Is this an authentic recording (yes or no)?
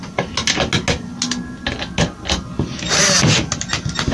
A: yes